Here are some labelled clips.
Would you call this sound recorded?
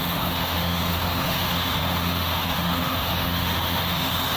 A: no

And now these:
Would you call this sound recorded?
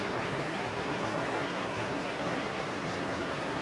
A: no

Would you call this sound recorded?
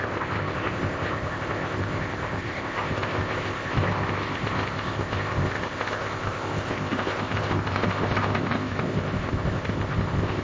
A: no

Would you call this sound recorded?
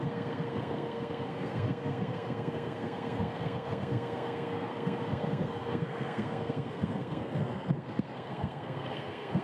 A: no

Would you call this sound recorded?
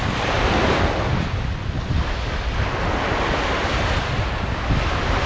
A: yes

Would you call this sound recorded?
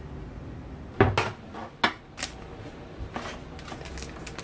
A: yes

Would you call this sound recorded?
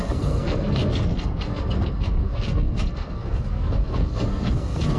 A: no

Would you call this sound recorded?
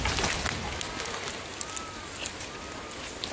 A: yes